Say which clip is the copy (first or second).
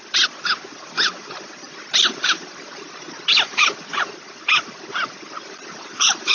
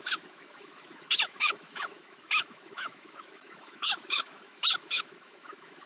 second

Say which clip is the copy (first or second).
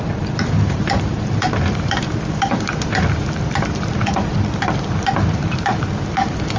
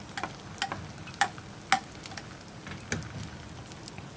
first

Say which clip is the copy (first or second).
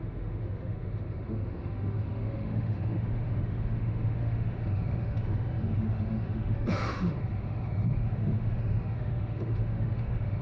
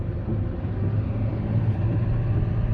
first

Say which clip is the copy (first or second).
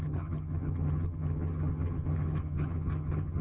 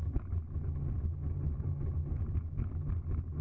first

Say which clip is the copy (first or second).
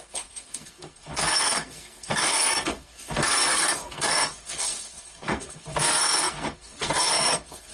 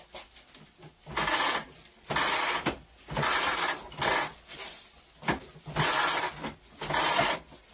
first